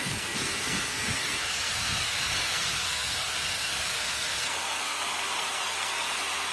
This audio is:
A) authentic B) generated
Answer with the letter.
B